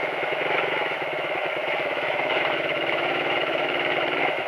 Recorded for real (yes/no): no